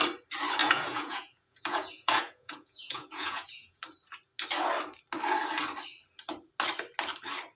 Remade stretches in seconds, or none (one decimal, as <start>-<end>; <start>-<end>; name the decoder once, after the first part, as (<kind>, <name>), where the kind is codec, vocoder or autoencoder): 0.6-3.8 (vocoder, Vocos)